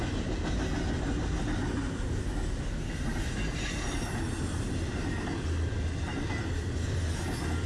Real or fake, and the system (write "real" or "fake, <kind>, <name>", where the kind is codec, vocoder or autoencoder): real